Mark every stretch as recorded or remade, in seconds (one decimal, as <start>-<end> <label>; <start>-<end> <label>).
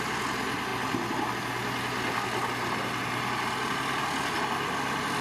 0.0-5.2 recorded